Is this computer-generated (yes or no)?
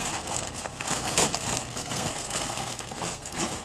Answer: yes